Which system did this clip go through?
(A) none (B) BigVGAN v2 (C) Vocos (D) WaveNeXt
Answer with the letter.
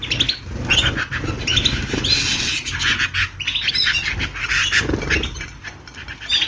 A